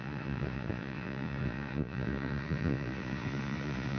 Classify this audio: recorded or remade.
remade